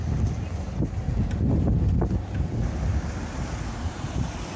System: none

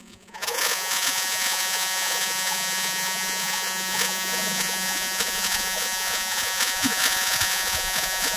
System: vocoder, Vocos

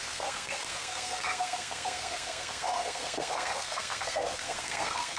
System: codec, SNAC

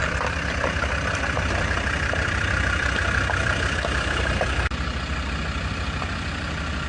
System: vocoder, BigVGAN v2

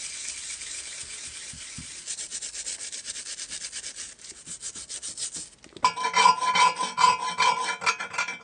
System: none